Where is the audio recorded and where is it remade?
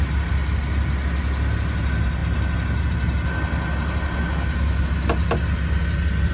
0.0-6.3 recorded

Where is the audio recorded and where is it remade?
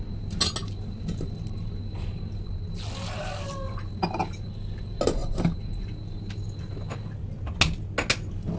0.0-8.6 recorded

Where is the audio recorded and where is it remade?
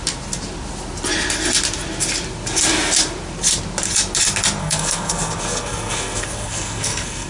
0.0-4.6 recorded; 4.6-7.3 remade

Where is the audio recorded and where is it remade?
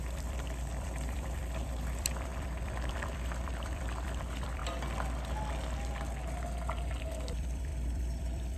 0.0-4.6 remade; 4.6-7.0 recorded; 7.0-8.6 remade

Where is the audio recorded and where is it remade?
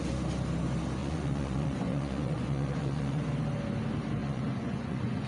0.0-1.0 recorded; 1.0-3.2 remade; 3.2-4.2 recorded; 4.2-5.3 remade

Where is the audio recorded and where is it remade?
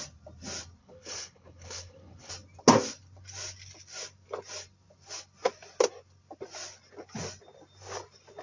0.0-0.8 recorded; 0.8-2.3 remade; 2.3-8.4 recorded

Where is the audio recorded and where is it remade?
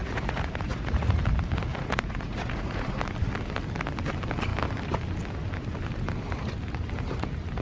0.0-1.2 remade; 1.2-1.7 recorded; 1.7-3.0 remade; 3.0-7.6 recorded